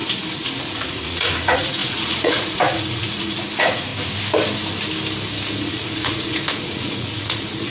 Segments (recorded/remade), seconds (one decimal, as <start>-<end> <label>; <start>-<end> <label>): 0.0-0.9 recorded; 0.9-3.9 remade; 3.9-5.7 recorded; 5.7-7.7 remade